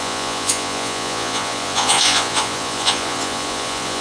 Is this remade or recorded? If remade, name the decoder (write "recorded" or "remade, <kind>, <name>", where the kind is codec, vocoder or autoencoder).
remade, vocoder, Vocos